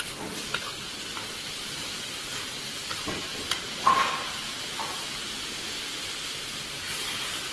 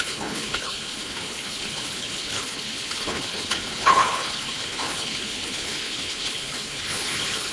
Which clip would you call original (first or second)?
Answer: first